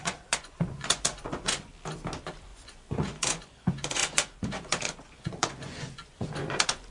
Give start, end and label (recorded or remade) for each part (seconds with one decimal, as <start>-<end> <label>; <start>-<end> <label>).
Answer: 0.0-1.7 remade; 1.7-2.5 recorded; 2.5-6.9 remade